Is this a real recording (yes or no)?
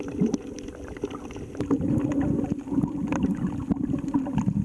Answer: yes